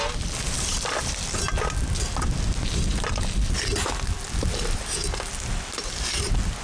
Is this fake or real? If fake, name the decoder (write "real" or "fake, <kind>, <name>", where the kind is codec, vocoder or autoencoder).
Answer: real